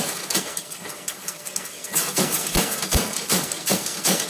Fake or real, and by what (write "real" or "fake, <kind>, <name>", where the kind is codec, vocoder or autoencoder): fake, codec, SNAC